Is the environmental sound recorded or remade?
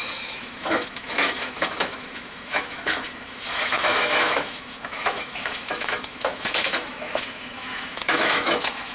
remade